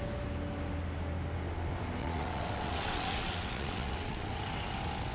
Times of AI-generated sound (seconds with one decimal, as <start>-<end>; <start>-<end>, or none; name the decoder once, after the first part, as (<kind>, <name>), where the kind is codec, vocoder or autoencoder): 2.0-4.3 (vocoder, WaveNeXt)